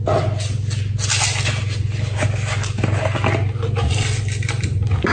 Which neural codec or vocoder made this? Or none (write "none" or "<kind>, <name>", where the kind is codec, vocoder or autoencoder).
none